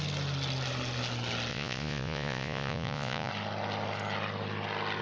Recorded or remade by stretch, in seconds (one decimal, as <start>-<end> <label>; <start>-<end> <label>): 0.0-1.5 recorded; 1.5-3.3 remade; 3.3-5.0 recorded